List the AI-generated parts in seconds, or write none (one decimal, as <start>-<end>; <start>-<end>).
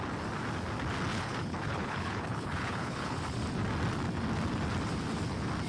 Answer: 1.1-3.2